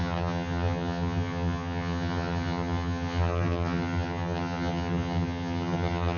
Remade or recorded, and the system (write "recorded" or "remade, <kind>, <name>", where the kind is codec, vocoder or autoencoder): remade, vocoder, HiFi-GAN